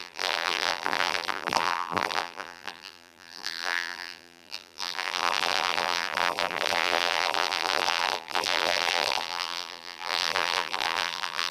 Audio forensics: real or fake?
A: fake